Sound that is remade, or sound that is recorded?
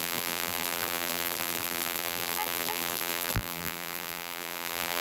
remade